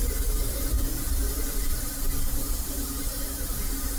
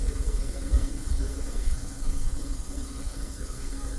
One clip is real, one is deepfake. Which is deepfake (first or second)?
second